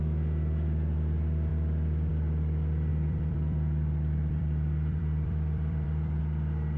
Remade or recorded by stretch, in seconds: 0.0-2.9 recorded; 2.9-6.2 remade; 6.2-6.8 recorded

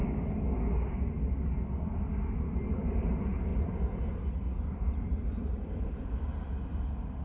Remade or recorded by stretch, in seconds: 0.0-5.4 recorded; 5.4-6.2 remade; 6.2-7.2 recorded